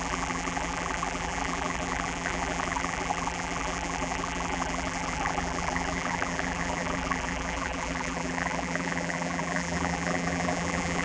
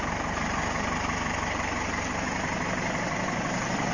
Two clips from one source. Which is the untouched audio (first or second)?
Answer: second